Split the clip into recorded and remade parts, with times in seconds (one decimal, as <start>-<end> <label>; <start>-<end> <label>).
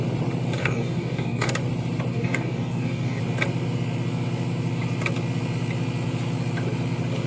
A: 0.0-0.6 recorded; 0.6-1.5 remade; 1.5-2.1 recorded; 2.1-3.2 remade; 3.2-7.3 recorded